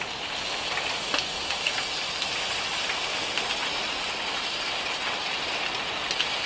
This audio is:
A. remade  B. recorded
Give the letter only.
B